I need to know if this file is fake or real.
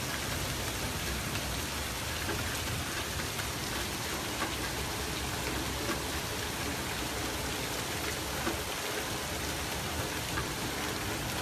real